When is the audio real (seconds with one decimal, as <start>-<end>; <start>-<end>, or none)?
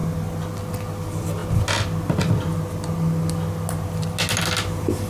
0.0-5.1